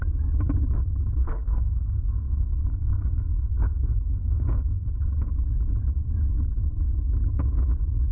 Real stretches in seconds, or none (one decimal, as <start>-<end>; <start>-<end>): 0.0-1.2; 4.9-8.1